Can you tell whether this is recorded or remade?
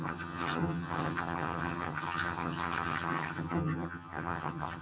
remade